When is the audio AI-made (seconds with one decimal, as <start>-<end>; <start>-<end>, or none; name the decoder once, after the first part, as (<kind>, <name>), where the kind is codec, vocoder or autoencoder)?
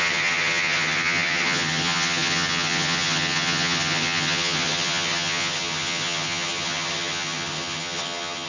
0.0-8.5 (vocoder, HiFi-GAN)